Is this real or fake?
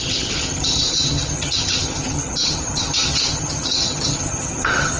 fake